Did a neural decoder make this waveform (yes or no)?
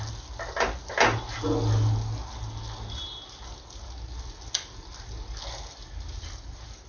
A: no